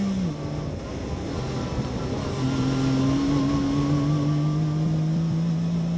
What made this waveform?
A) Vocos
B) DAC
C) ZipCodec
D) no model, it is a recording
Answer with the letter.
D